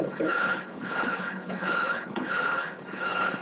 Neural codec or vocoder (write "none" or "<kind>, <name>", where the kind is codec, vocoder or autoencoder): codec, HILCodec